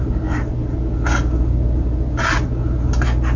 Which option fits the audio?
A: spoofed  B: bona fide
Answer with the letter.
B